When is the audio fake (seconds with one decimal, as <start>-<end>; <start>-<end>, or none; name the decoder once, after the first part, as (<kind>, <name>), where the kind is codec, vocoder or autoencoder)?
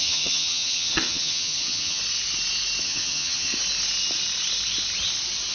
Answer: 0.0-2.0 (vocoder, HiFi-GAN); 2.8-3.5